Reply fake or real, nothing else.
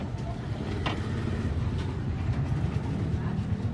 real